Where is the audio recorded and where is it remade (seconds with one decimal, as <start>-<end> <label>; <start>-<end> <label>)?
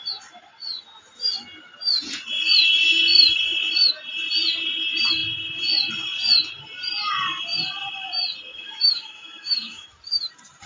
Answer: 0.0-8.5 recorded; 8.5-10.0 remade; 10.0-10.7 recorded